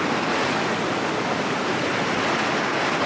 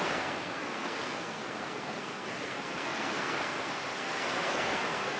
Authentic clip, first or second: first